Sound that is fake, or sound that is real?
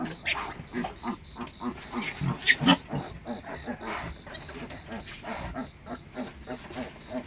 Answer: real